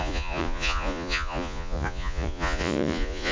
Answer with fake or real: fake